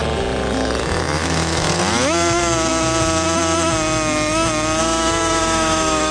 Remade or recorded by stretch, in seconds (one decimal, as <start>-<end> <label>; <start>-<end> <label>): 0.0-0.8 recorded; 0.8-1.8 remade; 1.8-4.8 recorded; 4.8-6.1 remade